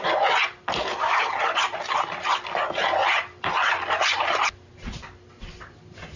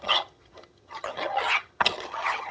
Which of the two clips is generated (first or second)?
second